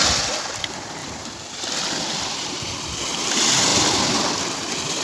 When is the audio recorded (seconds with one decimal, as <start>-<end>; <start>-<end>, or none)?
0.0-1.0; 3.0-5.0